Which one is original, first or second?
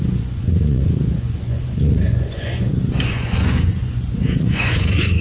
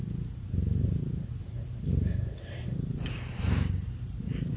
second